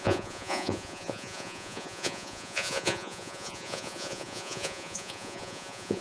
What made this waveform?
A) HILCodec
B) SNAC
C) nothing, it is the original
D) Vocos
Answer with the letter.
D